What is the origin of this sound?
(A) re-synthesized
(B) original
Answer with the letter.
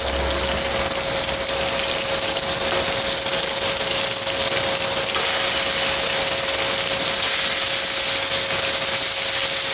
B